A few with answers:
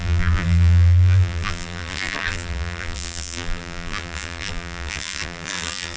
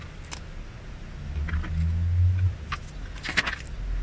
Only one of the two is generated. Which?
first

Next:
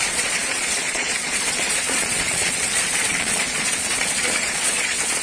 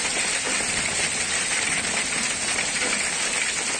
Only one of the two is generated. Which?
first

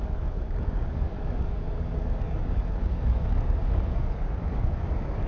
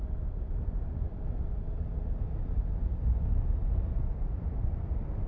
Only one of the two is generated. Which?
first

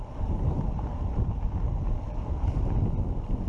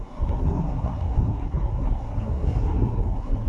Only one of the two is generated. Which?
second